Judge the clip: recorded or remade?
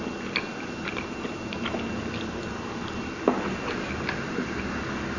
recorded